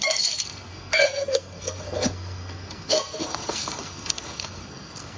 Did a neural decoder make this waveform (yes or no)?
yes